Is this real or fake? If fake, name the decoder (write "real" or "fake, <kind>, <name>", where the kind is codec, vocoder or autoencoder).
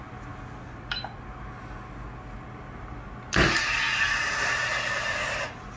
real